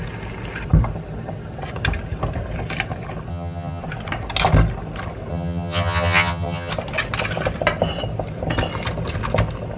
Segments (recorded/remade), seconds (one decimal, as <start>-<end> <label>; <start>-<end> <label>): 0.0-3.3 recorded; 3.3-3.8 remade; 3.8-5.3 recorded; 5.3-6.7 remade; 6.7-9.8 recorded